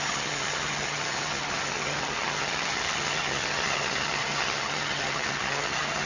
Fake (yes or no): yes